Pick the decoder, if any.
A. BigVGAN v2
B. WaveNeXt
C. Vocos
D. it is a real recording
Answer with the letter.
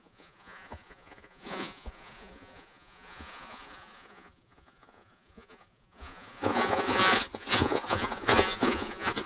C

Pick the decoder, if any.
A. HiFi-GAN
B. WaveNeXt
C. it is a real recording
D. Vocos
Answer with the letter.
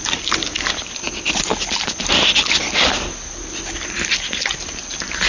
C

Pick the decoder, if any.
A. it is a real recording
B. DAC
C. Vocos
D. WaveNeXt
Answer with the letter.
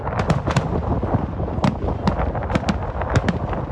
A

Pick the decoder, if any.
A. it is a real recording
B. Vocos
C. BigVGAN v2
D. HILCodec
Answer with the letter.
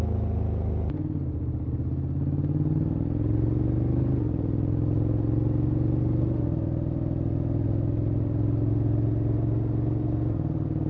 A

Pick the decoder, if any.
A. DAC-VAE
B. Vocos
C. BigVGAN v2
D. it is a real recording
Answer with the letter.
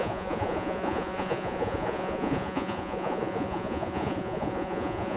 B